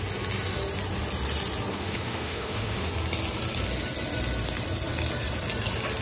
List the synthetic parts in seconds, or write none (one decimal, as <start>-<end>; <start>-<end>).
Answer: 1.7-2.9